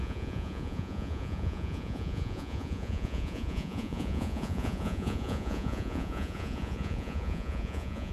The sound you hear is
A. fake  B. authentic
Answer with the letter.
A